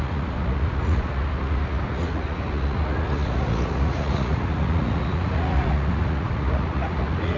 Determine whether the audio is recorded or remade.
remade